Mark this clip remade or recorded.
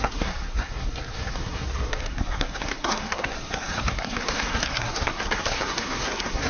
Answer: remade